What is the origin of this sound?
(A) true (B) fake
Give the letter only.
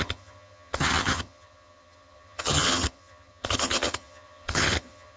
B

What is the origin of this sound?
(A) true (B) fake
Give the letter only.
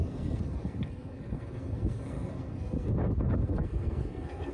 B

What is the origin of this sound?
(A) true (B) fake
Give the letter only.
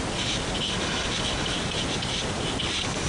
A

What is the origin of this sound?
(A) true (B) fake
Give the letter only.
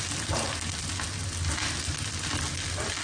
A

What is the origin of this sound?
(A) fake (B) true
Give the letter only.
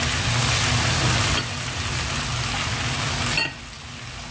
B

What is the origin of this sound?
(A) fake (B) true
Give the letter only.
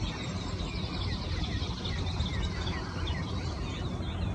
B